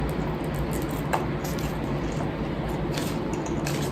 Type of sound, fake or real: real